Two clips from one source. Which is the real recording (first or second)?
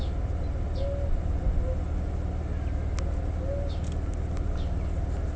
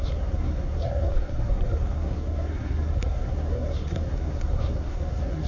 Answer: first